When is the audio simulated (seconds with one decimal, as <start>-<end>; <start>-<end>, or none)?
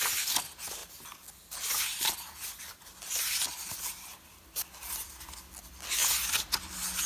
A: none